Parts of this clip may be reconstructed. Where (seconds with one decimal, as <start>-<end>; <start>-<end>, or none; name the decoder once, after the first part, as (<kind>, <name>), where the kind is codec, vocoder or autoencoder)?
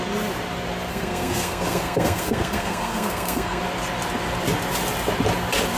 0.9-3.6 (codec, SNAC)